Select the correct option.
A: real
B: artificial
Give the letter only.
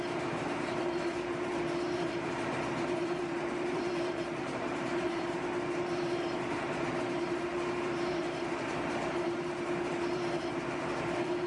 B